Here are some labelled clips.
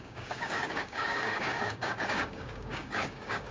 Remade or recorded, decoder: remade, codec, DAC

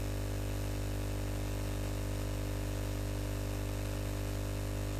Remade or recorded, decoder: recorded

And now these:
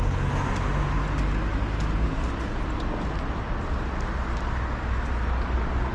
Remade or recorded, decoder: recorded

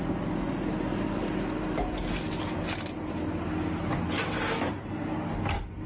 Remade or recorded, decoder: recorded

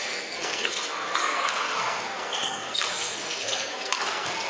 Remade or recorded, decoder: remade, codec, SNAC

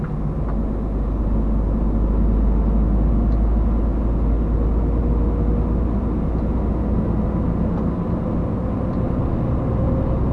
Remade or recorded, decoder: recorded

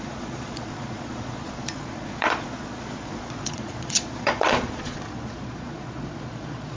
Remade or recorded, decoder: remade, vocoder, Vocos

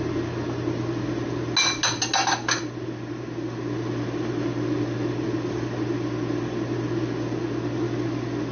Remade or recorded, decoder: recorded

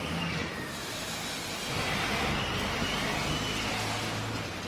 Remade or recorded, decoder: recorded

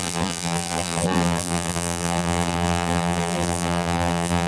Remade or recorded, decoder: remade, vocoder, BigVGAN v2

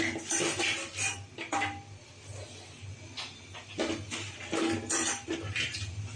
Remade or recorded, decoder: recorded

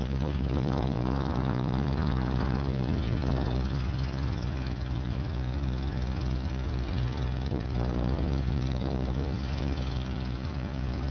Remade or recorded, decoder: remade, vocoder, Vocos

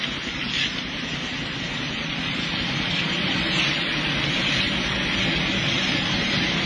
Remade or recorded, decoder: recorded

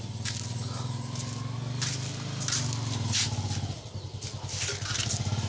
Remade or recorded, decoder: recorded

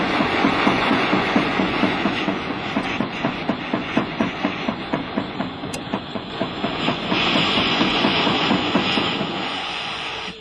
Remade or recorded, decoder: remade, vocoder, Vocos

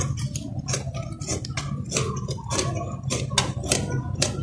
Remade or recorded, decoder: recorded